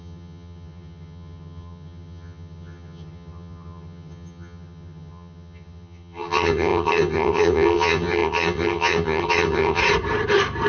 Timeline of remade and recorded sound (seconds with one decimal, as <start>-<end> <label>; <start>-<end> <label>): 0.0-9.8 remade; 9.8-10.7 recorded